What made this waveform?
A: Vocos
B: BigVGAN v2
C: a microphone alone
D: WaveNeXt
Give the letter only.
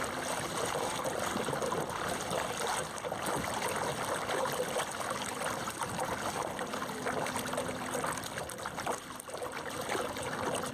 C